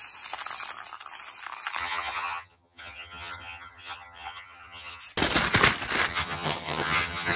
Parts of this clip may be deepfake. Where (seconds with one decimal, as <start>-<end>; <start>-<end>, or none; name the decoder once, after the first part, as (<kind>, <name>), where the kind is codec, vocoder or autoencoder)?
1.8-5.0 (vocoder, HiFi-GAN); 6.1-7.4